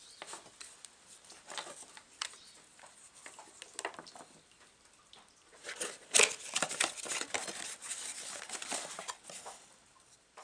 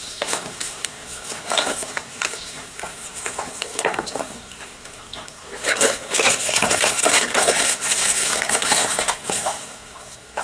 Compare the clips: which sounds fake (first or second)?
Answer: second